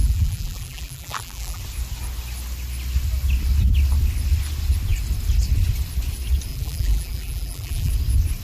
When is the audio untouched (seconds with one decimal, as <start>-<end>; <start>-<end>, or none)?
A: 1.6-6.5; 7.9-8.4